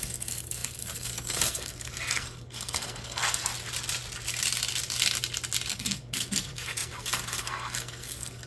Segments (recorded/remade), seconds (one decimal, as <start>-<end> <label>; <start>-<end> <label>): 0.0-3.5 remade; 3.5-5.7 recorded; 5.7-8.5 remade